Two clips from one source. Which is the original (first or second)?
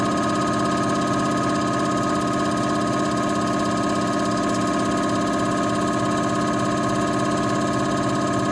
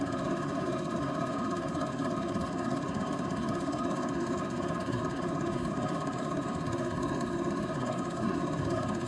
first